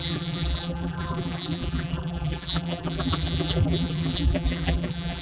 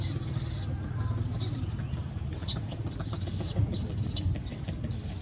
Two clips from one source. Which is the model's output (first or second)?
first